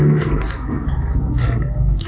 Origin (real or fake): fake